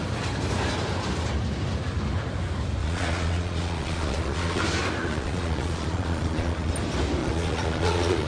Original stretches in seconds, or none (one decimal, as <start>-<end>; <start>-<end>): 0.0-2.8; 4.6-5.0; 6.7-7.2